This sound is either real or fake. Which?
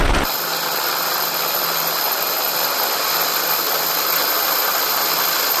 real